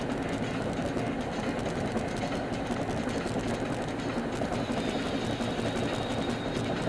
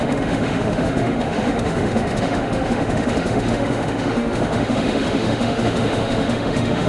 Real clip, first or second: first